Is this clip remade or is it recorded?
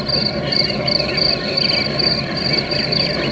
recorded